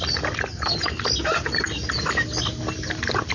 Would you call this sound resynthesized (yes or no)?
no